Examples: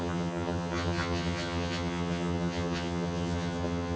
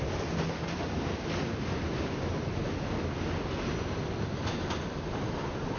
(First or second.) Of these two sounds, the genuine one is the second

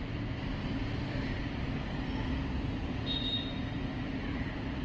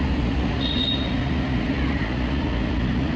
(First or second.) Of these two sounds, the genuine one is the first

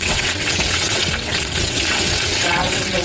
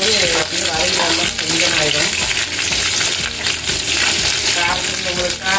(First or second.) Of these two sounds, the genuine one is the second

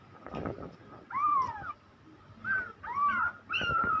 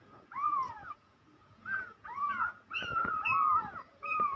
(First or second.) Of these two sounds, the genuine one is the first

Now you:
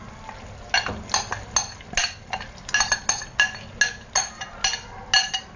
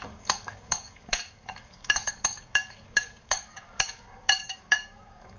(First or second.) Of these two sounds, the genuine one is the first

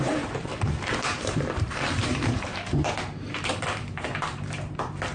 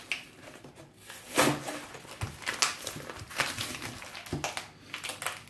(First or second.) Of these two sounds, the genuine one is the second